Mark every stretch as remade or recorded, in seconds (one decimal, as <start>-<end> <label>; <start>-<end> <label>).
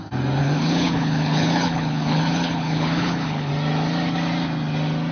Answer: 0.0-0.4 recorded; 0.4-3.5 remade; 3.5-5.1 recorded